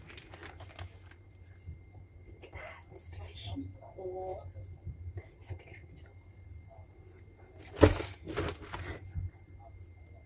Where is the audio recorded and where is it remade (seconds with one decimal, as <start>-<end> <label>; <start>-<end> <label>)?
0.0-10.3 recorded